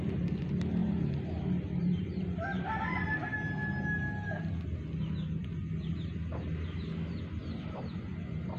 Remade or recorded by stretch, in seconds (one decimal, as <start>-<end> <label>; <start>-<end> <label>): 0.0-0.8 recorded; 0.8-2.8 remade; 2.8-8.6 recorded